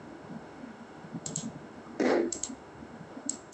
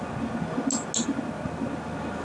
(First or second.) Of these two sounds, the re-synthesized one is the first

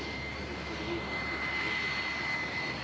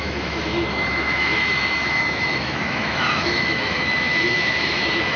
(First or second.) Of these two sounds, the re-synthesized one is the second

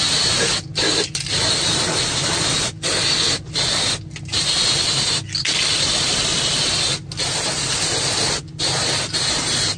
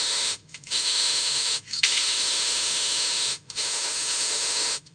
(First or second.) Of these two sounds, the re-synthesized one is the second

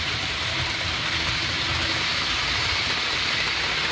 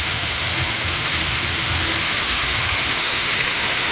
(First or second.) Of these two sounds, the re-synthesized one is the second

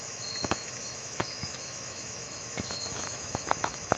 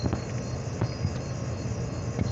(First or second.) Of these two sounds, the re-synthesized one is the first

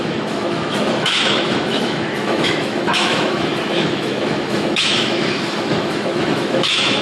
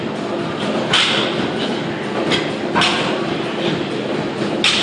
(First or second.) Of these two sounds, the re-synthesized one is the first